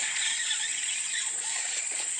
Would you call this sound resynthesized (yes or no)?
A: yes